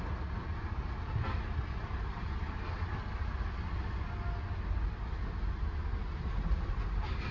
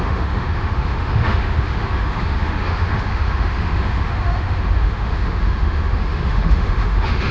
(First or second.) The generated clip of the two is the second